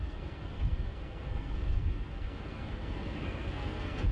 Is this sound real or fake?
fake